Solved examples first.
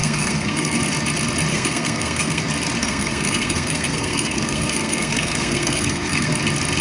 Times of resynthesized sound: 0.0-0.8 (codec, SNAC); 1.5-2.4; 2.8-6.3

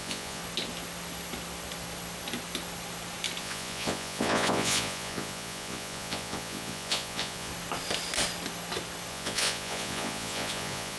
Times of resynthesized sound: 0.0-0.4 (vocoder, Vocos); 3.4-7.5; 9.1-11.0

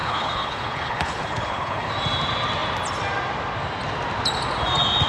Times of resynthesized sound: 0.0-1.9 (codec, HILCodec)

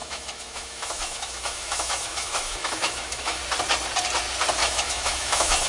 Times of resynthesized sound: 0.0-3.4 (autoencoder, DAC-VAE); 4.6-5.7

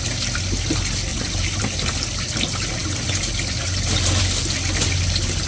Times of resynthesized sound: 1.1-1.6 (vocoder, BigVGAN v2)

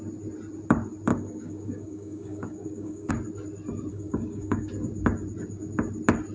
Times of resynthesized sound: 1.1-3.1 (codec, DAC); 3.9-4.7